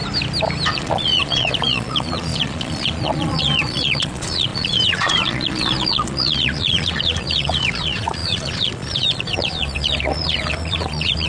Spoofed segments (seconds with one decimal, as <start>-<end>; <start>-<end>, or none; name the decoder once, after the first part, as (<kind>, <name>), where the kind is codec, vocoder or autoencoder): 0.7-11.3 (vocoder, Vocos)